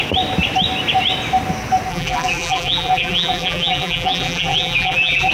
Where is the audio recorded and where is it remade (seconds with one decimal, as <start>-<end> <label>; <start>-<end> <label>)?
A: 0.0-1.9 recorded; 1.9-5.3 remade

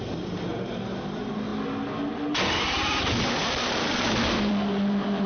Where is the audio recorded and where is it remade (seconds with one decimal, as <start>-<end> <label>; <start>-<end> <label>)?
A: 0.0-1.5 remade; 1.5-2.1 recorded; 2.1-4.5 remade; 4.5-5.3 recorded

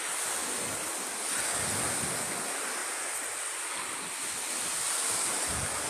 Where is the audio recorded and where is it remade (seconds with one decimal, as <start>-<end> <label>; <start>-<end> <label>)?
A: 0.0-2.8 recorded; 2.8-3.7 remade; 3.7-5.9 recorded

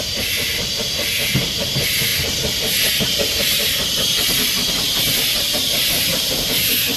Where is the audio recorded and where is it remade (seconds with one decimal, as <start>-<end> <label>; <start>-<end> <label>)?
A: 0.0-2.1 remade; 2.1-2.9 recorded; 2.9-7.0 remade

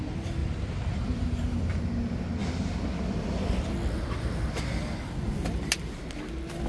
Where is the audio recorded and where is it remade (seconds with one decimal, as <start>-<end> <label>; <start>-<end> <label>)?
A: 0.0-0.4 recorded; 0.4-1.8 remade; 1.8-6.7 recorded

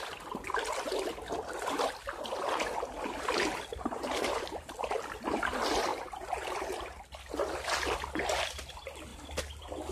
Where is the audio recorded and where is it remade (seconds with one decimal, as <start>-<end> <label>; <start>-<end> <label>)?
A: 0.0-3.7 recorded; 3.7-4.9 remade; 4.9-5.9 recorded; 5.9-7.0 remade; 7.0-9.9 recorded

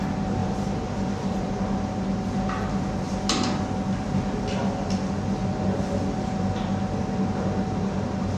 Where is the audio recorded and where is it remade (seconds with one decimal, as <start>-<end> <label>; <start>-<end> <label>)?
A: 0.0-0.4 recorded; 0.4-1.6 remade; 1.6-8.4 recorded